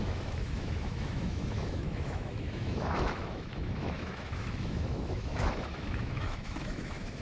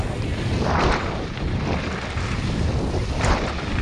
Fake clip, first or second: first